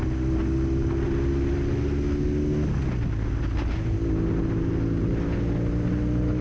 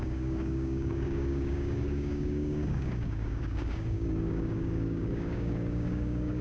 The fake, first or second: second